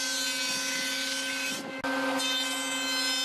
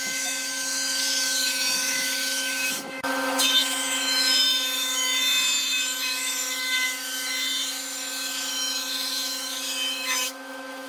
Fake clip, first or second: second